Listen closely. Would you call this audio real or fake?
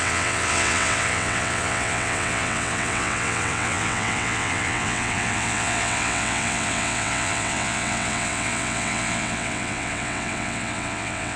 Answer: fake